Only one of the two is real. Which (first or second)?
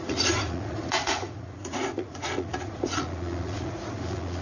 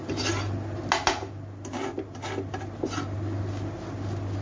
second